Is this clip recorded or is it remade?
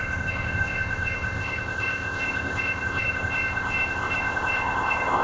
remade